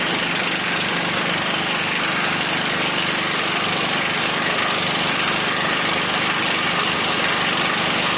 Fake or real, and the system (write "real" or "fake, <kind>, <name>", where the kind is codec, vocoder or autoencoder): real